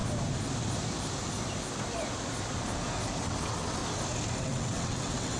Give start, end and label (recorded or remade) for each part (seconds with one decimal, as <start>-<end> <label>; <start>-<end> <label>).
0.0-3.2 recorded; 3.2-3.8 remade; 3.8-4.4 recorded; 4.4-5.4 remade